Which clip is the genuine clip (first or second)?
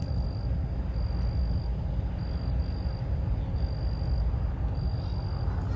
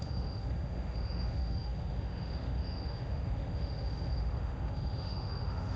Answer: first